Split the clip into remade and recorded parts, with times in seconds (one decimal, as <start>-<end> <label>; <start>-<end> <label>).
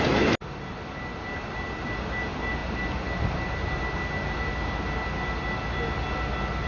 0.0-6.7 recorded